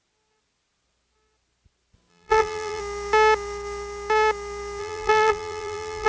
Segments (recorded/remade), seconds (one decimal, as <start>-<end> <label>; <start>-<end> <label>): 0.0-2.1 recorded; 2.1-2.8 remade; 2.8-4.8 recorded; 4.8-6.1 remade